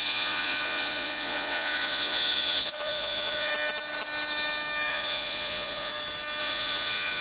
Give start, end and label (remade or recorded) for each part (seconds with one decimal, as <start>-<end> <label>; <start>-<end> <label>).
0.0-3.5 remade; 3.5-4.9 recorded; 4.9-5.9 remade; 5.9-6.4 recorded; 6.4-7.2 remade